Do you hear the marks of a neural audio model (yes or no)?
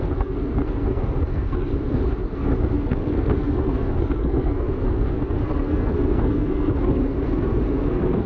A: yes